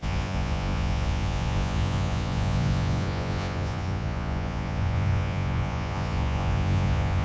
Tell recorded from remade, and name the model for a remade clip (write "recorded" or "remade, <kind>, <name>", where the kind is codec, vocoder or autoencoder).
remade, vocoder, Vocos